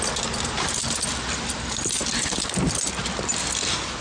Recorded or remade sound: recorded